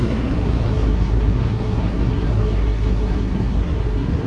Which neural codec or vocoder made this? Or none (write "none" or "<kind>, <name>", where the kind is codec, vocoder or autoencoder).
codec, SNAC